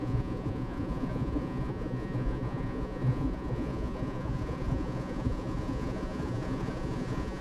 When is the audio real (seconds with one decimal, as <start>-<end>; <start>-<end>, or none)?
none